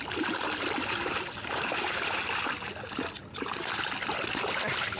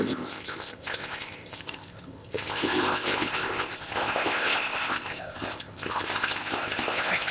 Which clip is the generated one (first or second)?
second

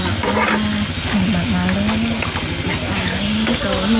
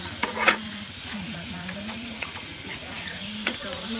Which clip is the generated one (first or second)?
second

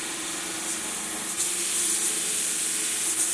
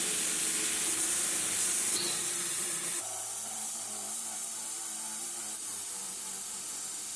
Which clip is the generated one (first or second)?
second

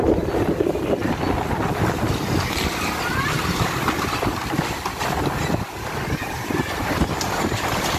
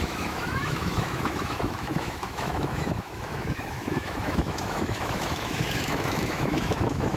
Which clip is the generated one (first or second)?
second